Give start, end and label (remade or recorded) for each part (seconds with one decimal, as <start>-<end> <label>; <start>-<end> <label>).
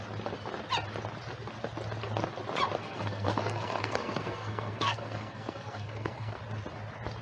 0.0-2.8 recorded; 2.8-6.4 remade; 6.4-7.2 recorded